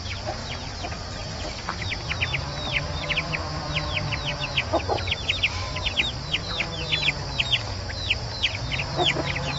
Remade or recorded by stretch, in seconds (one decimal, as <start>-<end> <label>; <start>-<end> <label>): 0.0-4.3 remade; 4.3-8.8 recorded; 8.8-9.6 remade